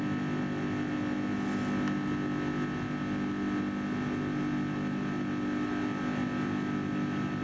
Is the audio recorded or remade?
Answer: recorded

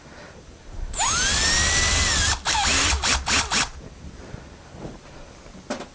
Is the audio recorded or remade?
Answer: recorded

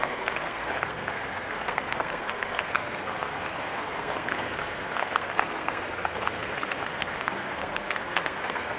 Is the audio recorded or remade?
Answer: remade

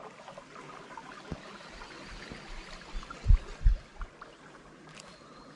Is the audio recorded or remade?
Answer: recorded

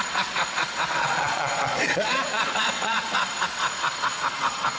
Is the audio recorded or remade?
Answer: remade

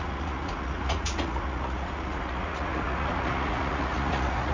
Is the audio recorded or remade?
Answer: remade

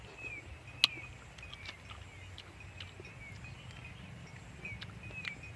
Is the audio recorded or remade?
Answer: recorded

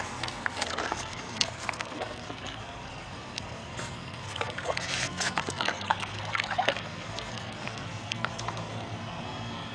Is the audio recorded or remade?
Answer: remade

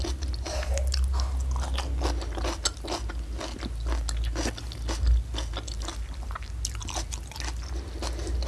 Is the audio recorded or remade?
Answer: recorded